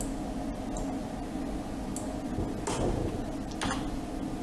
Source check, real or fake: real